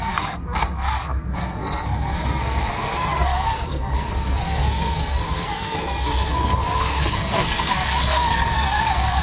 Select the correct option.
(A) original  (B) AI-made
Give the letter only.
B